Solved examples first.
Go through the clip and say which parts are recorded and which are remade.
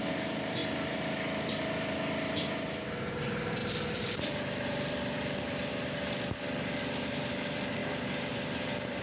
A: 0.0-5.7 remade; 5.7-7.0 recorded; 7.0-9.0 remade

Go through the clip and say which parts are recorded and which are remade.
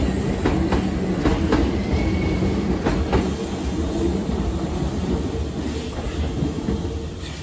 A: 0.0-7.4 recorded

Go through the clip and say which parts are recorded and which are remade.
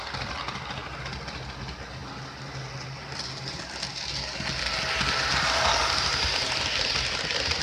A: 0.0-7.6 recorded